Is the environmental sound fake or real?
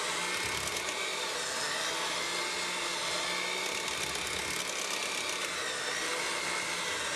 real